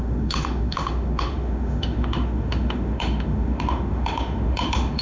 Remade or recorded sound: remade